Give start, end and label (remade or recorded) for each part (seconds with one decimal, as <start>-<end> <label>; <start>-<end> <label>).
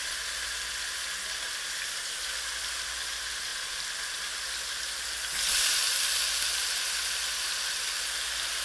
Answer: 0.0-8.6 recorded